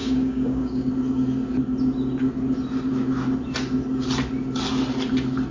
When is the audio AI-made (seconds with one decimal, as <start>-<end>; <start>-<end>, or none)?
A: 0.0-0.9